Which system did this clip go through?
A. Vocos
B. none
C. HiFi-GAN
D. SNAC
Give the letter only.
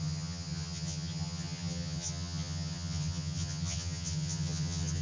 C